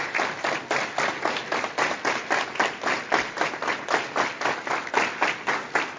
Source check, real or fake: real